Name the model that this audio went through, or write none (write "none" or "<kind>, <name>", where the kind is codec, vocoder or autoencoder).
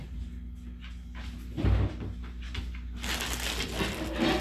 none